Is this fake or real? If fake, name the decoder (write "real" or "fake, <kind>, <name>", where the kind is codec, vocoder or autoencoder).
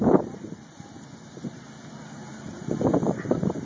real